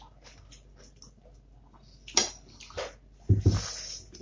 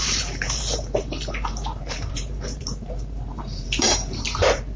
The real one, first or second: first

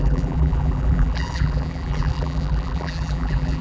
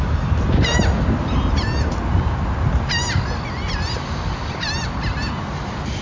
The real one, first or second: second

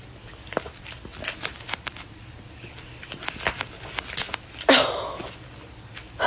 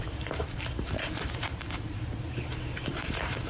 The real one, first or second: first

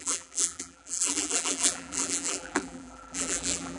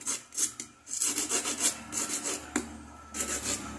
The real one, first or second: second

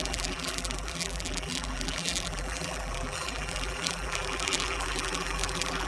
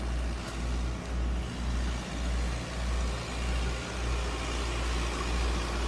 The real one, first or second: second